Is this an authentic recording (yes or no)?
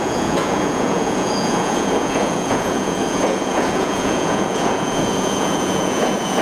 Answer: no